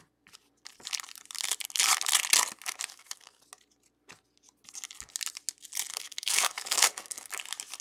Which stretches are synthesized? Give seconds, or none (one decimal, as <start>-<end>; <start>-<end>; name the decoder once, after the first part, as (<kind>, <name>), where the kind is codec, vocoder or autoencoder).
2.9-3.4 (codec, SNAC); 5.9-7.3